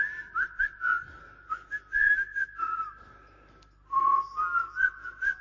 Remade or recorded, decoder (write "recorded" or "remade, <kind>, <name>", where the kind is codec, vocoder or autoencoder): recorded